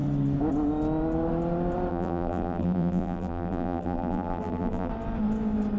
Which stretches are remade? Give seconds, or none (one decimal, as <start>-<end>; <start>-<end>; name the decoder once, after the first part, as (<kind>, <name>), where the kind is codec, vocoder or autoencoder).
1.9-4.9 (vocoder, BigVGAN v2)